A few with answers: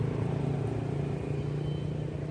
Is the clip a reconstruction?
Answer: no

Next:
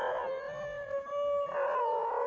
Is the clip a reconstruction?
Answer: no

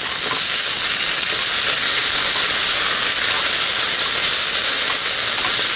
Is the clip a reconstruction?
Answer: no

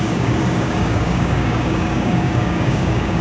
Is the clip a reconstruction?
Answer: yes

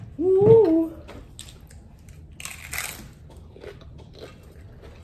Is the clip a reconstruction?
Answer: no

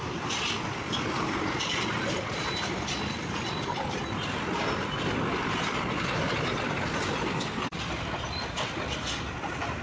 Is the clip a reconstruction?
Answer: no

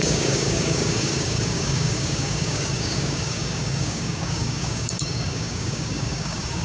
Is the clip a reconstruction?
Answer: yes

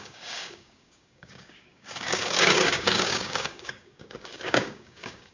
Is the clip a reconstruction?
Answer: yes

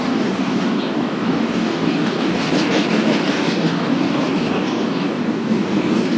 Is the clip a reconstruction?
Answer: yes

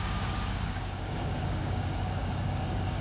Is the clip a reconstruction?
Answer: yes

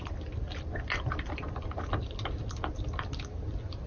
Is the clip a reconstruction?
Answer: no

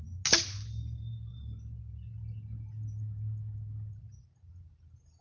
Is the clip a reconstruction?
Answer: no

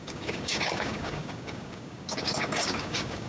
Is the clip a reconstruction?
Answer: yes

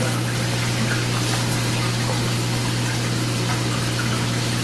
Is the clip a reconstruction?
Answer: no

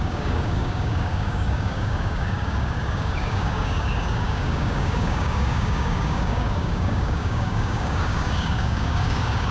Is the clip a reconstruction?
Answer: yes